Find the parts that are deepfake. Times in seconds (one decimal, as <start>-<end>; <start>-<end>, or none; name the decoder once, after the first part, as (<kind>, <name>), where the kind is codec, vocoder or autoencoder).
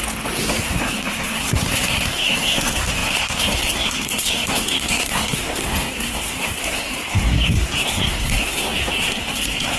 0.6-9.8 (codec, SNAC)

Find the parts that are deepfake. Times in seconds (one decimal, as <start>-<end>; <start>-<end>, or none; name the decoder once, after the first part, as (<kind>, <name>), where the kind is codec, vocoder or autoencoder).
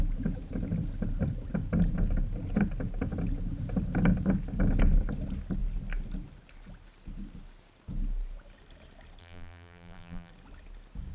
9.2-10.3 (vocoder, BigVGAN v2)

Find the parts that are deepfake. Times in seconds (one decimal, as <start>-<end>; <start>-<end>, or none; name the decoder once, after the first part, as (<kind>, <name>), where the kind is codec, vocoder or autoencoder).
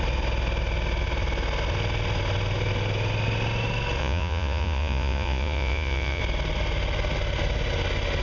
4.0-6.2 (vocoder, Vocos)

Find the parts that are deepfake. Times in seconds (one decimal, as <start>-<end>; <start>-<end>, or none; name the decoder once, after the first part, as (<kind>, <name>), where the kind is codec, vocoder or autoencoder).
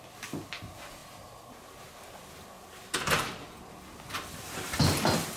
none